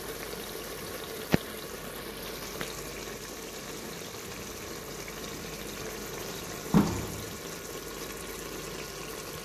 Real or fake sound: real